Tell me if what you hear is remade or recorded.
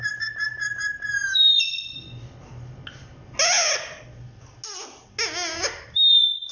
recorded